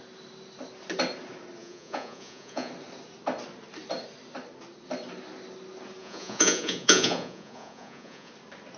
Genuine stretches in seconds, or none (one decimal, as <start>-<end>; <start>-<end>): 0.0-1.6; 2.7-6.0; 8.3-8.8